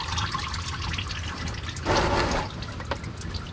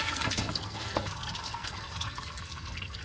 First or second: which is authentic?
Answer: first